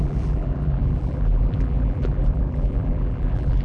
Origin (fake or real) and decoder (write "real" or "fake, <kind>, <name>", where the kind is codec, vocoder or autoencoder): fake, vocoder, BigVGAN v2